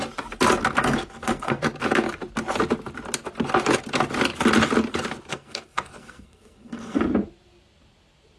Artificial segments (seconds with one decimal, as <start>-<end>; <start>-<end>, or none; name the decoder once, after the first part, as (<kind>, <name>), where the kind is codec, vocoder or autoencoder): 0.8-1.6 (codec, SNAC); 5.3-7.0